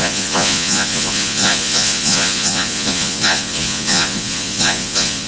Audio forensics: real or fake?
fake